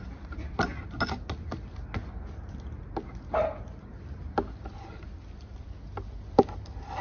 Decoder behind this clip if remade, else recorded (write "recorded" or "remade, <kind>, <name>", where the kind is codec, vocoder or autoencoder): recorded